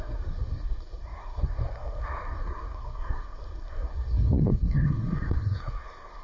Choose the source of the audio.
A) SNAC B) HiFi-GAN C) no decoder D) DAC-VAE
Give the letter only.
A